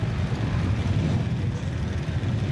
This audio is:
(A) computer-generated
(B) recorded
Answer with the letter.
B